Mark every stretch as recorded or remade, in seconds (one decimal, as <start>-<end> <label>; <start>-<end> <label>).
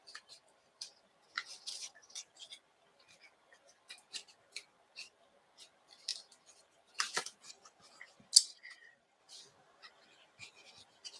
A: 0.0-0.9 remade; 0.9-8.4 recorded; 8.4-9.2 remade; 9.2-11.2 recorded